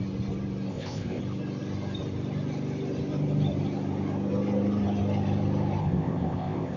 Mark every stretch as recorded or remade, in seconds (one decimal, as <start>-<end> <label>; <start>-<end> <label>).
0.0-0.7 recorded; 0.7-1.2 remade; 1.2-5.8 recorded; 5.8-6.8 remade